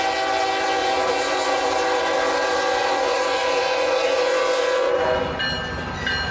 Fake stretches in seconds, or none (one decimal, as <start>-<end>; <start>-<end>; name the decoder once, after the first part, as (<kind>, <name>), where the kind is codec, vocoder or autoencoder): 0.8-1.6 (vocoder, Vocos); 2.8-5.4